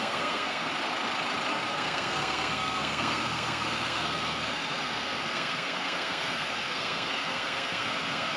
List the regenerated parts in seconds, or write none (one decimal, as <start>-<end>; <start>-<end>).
0.0-0.7; 1.5-8.4